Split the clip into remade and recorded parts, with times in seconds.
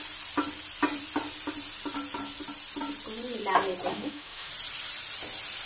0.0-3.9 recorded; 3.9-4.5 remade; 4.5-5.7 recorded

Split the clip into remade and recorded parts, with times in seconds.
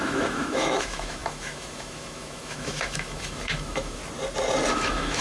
0.0-4.0 remade; 4.0-4.7 recorded; 4.7-5.2 remade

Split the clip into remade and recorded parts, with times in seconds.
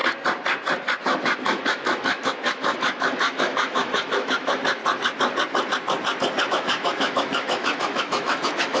0.0-1.0 recorded; 1.0-4.8 remade; 4.8-6.5 recorded; 6.5-8.8 remade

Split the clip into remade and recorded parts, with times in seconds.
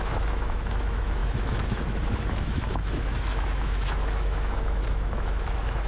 0.0-5.9 remade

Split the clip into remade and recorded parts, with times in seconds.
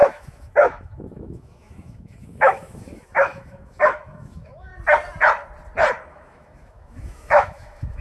0.0-4.7 remade; 4.7-6.1 recorded; 6.1-8.0 remade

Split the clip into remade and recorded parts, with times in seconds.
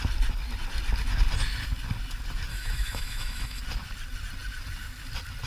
0.0-2.5 recorded; 2.5-3.6 remade; 3.6-5.5 recorded